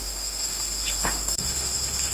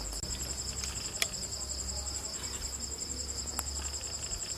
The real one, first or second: second